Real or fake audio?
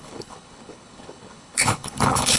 fake